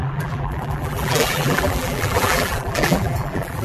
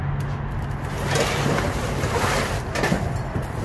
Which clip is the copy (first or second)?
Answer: first